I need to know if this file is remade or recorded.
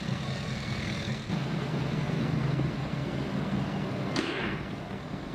remade